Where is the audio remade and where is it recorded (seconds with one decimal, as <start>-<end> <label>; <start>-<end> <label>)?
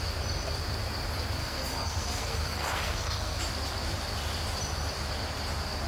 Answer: 0.0-1.4 recorded; 1.4-3.4 remade; 3.4-5.9 recorded